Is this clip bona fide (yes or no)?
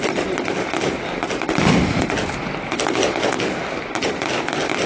yes